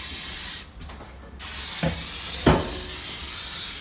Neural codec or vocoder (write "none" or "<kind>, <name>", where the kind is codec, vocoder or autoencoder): none